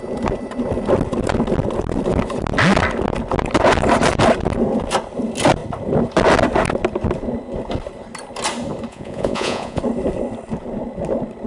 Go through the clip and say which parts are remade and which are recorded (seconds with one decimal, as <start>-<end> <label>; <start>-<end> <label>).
0.0-8.9 recorded; 8.9-9.8 remade; 9.8-11.5 recorded